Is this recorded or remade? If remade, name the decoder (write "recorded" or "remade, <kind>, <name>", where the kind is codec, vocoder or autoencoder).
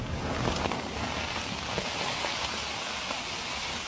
recorded